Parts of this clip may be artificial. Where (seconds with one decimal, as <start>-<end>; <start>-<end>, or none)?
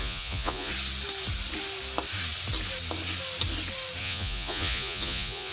0.0-0.7; 4.0-5.5